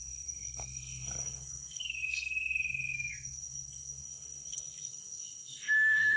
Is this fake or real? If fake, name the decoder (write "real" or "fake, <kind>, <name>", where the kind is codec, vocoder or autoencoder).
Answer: fake, codec, SNAC